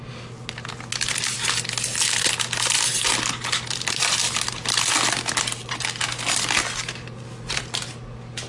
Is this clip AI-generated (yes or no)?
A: no